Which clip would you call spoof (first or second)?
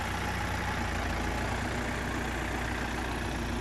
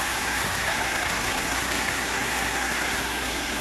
second